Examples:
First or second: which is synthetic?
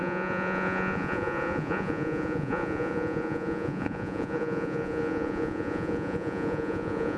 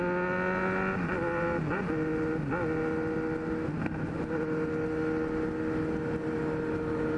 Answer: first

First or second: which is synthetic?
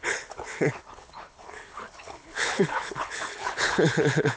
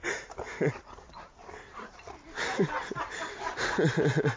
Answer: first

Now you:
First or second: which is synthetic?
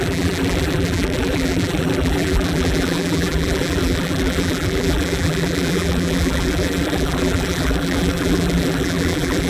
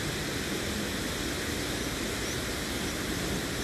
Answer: first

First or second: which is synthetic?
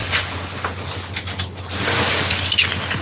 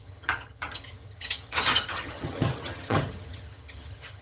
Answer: second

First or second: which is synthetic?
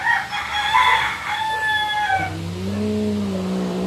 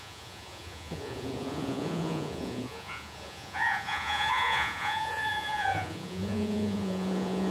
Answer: second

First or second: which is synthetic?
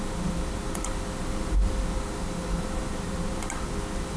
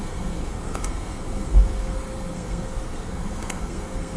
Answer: second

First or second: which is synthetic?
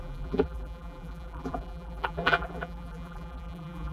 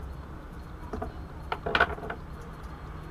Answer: first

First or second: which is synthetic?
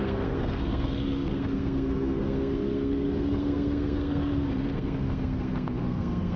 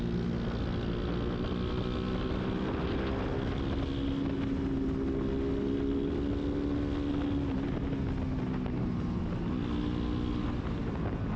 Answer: first